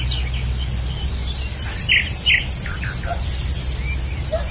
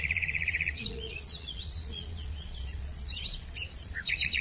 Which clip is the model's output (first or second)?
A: second